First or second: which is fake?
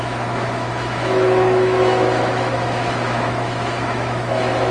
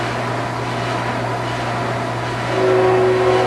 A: first